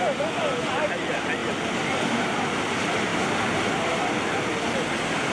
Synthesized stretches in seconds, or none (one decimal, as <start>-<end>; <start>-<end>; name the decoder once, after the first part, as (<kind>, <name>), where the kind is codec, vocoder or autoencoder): none